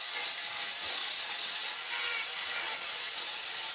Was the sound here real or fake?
fake